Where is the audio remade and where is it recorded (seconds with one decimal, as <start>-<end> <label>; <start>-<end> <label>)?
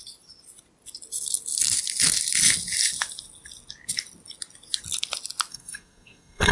0.0-5.5 recorded; 5.5-6.5 remade